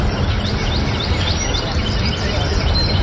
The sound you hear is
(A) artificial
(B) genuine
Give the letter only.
B